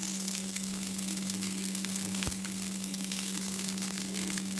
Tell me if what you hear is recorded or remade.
remade